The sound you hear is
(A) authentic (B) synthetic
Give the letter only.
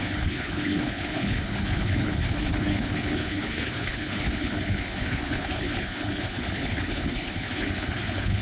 B